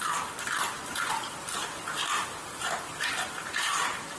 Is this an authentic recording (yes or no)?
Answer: yes